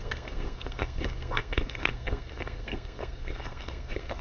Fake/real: fake